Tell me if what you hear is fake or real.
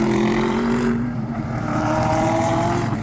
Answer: fake